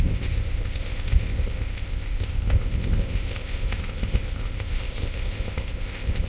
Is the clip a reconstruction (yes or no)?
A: yes